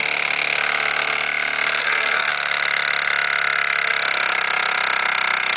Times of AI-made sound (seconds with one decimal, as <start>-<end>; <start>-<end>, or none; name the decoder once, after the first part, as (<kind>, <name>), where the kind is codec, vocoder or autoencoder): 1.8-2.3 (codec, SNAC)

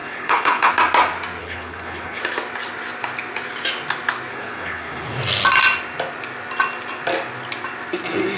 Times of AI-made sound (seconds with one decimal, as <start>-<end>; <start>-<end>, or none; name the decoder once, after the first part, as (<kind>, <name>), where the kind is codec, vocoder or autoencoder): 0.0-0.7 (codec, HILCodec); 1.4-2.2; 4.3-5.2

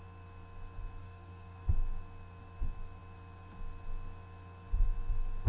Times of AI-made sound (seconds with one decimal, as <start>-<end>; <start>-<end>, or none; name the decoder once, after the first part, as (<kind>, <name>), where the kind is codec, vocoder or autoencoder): 1.0-1.7 (codec, DAC)

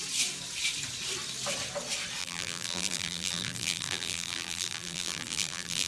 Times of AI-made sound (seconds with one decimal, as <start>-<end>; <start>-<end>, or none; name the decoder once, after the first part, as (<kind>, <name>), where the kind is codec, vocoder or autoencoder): 2.2-5.9 (vocoder, BigVGAN v2)